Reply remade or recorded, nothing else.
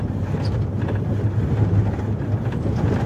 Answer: recorded